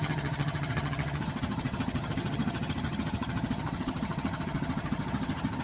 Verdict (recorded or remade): remade